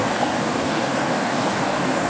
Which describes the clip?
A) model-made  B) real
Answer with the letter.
A